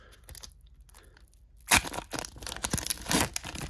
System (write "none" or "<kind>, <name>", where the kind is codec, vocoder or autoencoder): none